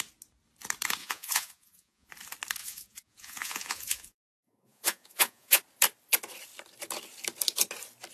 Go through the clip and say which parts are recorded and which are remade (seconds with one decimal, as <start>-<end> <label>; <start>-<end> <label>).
0.0-1.0 recorded; 1.0-2.1 remade; 2.1-2.6 recorded; 2.6-5.6 remade; 5.6-8.1 recorded